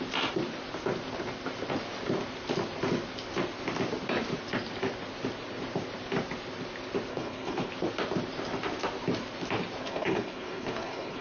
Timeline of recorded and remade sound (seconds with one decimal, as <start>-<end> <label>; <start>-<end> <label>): 0.0-7.1 recorded; 7.1-7.7 remade; 7.7-9.8 recorded; 9.8-11.2 remade